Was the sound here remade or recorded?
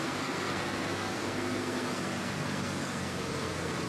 remade